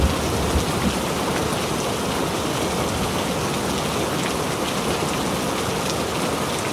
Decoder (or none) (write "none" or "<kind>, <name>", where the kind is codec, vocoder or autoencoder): none